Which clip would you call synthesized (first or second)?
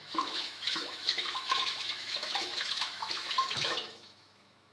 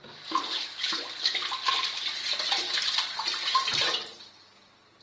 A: first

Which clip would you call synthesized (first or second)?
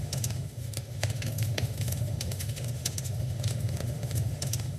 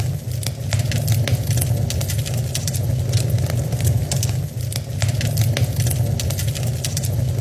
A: first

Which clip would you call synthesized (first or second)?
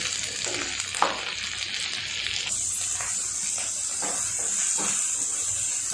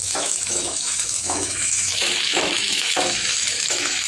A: second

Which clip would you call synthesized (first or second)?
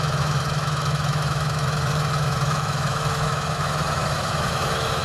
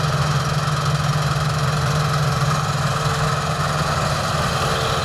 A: first